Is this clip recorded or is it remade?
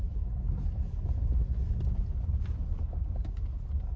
recorded